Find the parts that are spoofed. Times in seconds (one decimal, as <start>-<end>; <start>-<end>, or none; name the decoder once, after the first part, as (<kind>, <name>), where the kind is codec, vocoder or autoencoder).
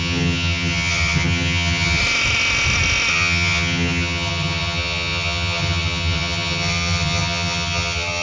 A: 0.0-2.0 (vocoder, HiFi-GAN); 3.1-8.2